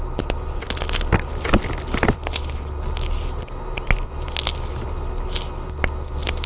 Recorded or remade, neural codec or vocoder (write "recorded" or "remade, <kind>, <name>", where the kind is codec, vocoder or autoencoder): recorded